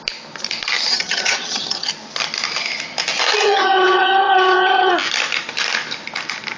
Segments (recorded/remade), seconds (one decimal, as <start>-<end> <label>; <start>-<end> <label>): 0.0-0.9 recorded; 0.9-1.9 remade; 1.9-3.4 recorded; 3.4-4.9 remade; 4.9-6.6 recorded